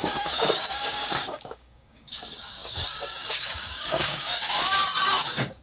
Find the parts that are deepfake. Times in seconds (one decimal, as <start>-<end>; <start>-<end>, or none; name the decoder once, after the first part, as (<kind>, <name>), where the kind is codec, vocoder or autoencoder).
0.0-5.6 (codec, DAC)